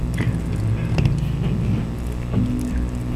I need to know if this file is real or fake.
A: real